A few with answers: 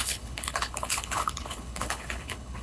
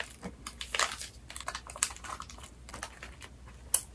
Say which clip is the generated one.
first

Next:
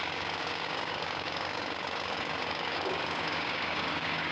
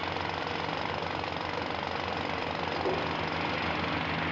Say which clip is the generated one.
first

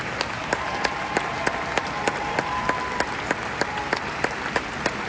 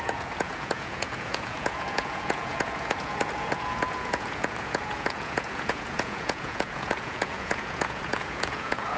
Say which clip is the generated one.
second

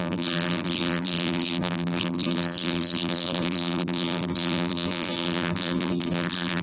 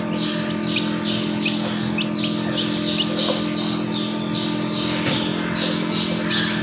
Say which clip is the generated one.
first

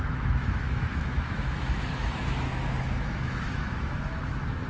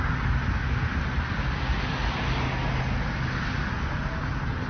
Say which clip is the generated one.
first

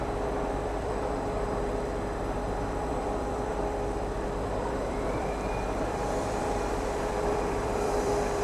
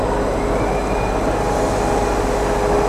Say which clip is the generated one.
first